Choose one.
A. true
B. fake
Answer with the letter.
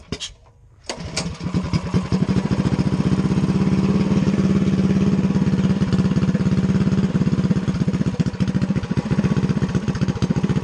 A